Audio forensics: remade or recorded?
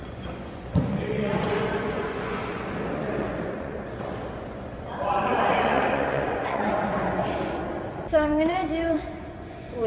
remade